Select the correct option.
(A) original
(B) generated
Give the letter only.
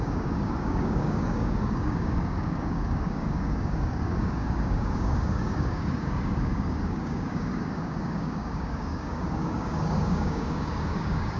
B